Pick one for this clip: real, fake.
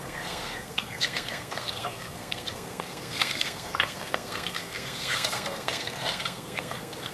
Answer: fake